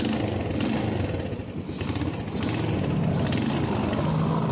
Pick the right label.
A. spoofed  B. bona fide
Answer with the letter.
B